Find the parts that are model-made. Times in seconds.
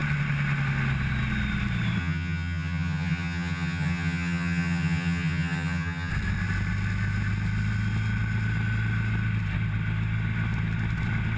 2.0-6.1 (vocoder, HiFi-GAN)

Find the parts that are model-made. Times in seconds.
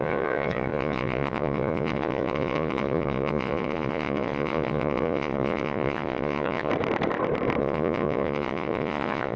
0.0-6.7 (vocoder, Vocos); 7.6-9.4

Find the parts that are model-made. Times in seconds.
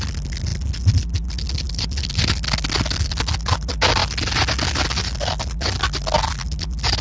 none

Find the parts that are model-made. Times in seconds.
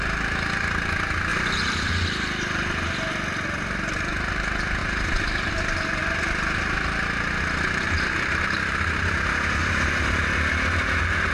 1.3-1.9 (vocoder, BigVGAN v2); 4.8-5.5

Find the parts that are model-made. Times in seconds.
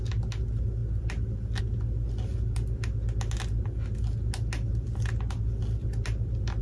none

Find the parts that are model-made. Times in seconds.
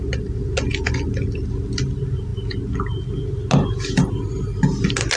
none